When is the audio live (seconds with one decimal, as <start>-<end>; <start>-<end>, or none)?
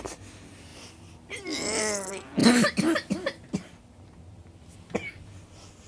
0.0-2.4; 3.1-5.9